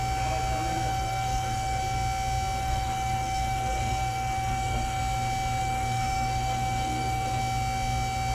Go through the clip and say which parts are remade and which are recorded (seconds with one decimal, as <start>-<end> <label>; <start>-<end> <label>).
0.0-0.9 recorded; 0.9-1.8 remade; 1.8-2.6 recorded; 2.6-5.0 remade; 5.0-5.6 recorded; 5.6-7.4 remade; 7.4-8.3 recorded